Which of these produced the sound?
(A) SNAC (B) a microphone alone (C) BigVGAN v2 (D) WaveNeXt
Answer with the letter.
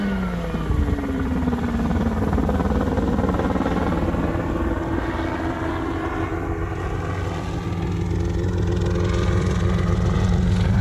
B